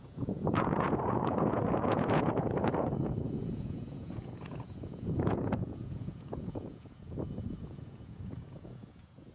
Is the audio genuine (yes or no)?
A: no